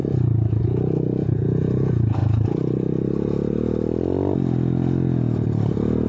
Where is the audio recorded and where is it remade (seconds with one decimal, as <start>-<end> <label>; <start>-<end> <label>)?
0.0-0.6 recorded; 0.6-2.2 remade; 2.2-6.1 recorded